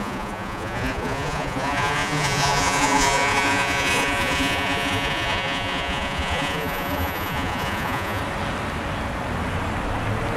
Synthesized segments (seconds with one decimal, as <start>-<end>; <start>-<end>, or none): 0.0-8.2